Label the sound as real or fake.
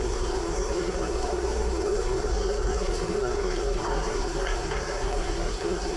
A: fake